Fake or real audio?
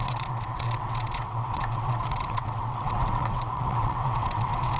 fake